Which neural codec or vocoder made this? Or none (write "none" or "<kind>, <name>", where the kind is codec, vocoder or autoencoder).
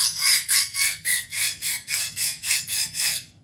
codec, SNAC